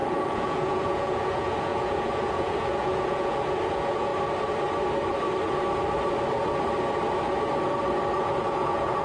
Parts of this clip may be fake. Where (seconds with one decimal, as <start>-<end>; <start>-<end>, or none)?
0.0-4.1; 8.2-9.0